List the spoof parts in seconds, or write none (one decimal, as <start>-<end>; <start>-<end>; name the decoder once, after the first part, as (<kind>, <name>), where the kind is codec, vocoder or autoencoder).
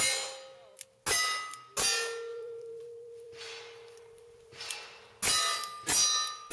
2.3-5.1 (vocoder, BigVGAN v2)